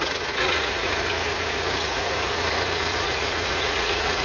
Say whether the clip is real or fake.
fake